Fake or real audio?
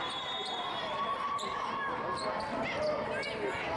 fake